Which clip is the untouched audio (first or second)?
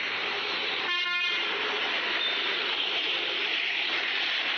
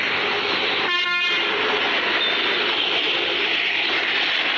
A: second